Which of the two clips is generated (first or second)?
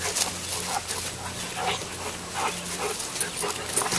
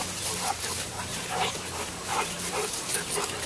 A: second